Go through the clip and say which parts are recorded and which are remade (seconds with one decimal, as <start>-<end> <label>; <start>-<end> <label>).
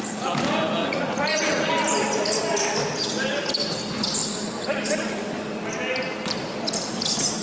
0.0-0.8 recorded; 0.8-1.7 remade; 1.7-7.4 recorded